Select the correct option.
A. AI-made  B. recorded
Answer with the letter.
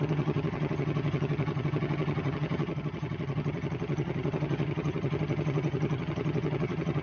A